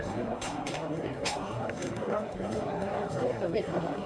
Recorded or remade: remade